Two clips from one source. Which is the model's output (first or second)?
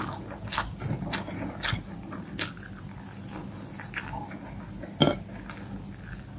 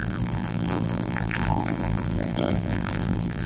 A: second